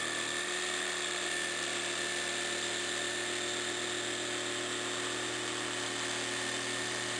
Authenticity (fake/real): real